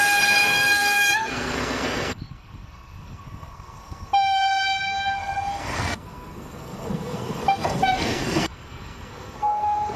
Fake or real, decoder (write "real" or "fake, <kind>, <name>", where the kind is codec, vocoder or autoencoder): fake, codec, SNAC